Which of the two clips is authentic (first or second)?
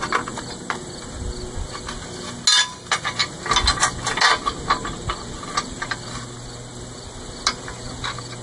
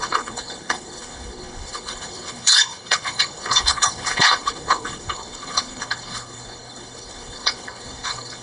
first